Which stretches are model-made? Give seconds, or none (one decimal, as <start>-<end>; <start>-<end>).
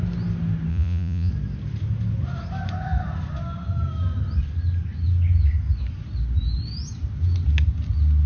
0.7-1.3